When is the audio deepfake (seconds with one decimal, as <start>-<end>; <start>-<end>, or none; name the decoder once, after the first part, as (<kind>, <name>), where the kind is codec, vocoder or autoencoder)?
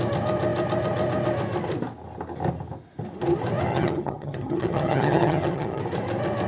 3.7-5.8 (vocoder, HiFi-GAN)